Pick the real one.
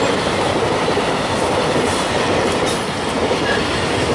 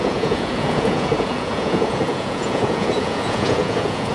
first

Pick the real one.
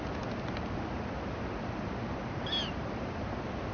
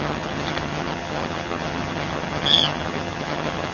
first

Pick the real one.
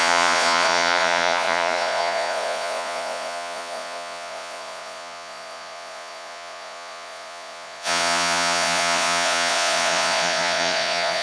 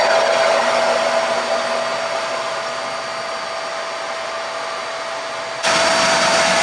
second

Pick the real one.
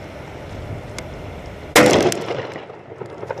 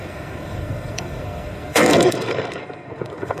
first